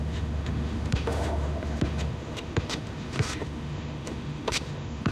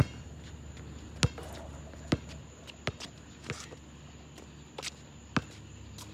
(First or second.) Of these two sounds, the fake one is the first